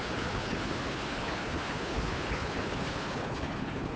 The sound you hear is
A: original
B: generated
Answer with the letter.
B